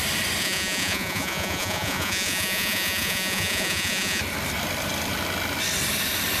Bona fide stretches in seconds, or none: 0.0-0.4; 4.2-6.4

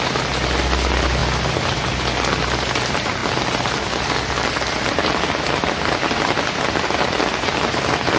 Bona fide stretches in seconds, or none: 0.0-8.2

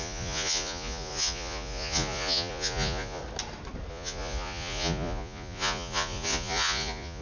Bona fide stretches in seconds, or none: 3.2-3.9

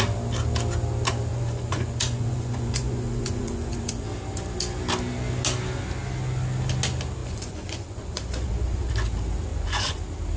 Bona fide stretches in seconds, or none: 0.0-1.3; 3.9-7.2; 8.9-9.5; 10.0-10.4

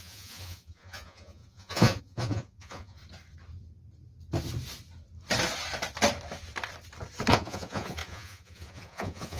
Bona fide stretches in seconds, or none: 3.0-7.3

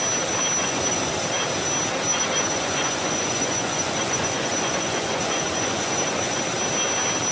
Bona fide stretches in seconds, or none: 0.0-0.6; 1.1-2.1; 6.4-7.3

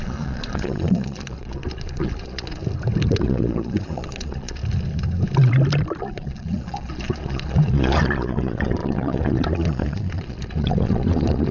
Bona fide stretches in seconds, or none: 2.6-3.1; 4.6-6.0

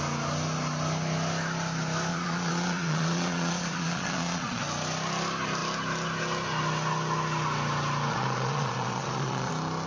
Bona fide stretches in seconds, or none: 0.0-2.1; 4.6-8.1; 9.5-9.9